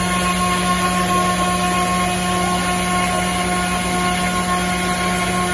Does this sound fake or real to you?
real